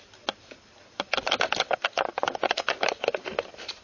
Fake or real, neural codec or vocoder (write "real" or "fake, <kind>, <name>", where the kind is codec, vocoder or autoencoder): real